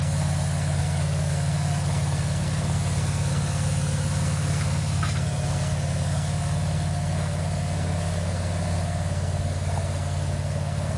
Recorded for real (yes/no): no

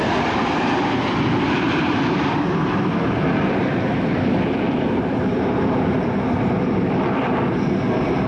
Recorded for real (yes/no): no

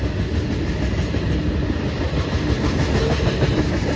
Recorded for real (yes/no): yes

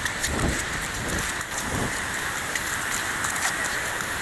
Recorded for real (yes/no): no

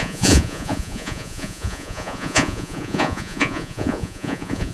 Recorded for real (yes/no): no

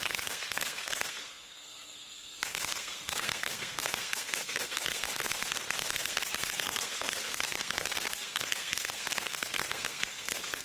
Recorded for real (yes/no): no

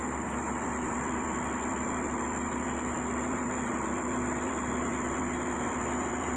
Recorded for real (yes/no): no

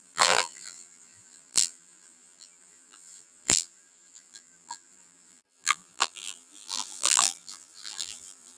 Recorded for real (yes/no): no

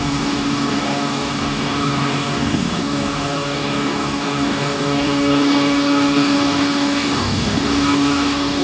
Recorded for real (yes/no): no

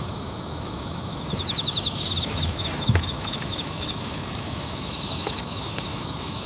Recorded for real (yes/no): no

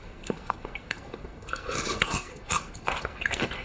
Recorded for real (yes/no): no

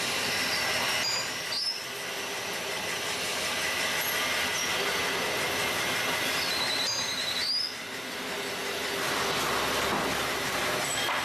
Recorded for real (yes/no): yes